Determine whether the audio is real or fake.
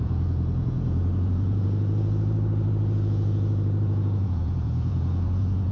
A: fake